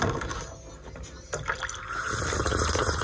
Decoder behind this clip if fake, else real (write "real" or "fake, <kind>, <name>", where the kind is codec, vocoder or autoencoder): real